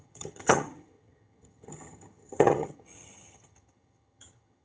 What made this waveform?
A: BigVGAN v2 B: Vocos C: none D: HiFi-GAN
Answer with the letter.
D